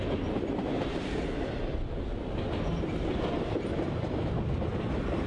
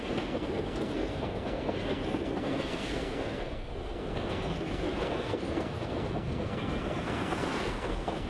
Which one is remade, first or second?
second